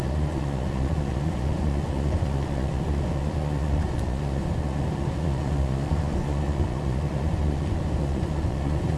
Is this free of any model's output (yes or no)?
no